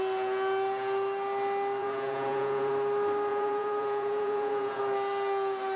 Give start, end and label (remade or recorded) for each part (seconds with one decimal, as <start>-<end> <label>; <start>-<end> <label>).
0.0-1.8 recorded; 1.8-2.7 remade; 2.7-3.3 recorded; 3.3-4.8 remade; 4.8-5.8 recorded